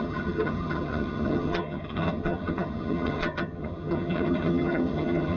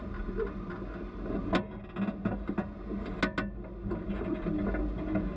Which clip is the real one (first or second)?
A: second